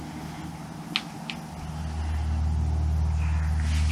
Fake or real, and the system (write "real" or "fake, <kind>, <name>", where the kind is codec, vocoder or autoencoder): real